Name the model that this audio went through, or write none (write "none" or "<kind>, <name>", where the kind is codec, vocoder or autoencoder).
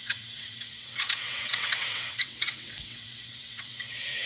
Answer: vocoder, WaveNeXt